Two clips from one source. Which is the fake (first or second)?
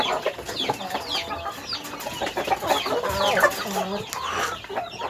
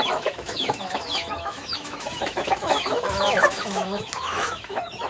second